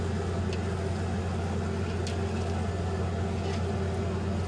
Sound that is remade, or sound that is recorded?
recorded